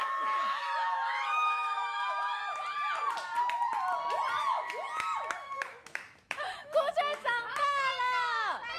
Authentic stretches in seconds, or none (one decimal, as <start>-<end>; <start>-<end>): 2.4-4.4; 7.9-8.8